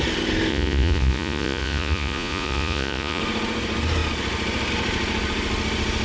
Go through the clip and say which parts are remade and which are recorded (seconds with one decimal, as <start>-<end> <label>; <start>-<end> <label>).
0.0-0.5 recorded; 0.5-3.2 remade; 3.2-6.0 recorded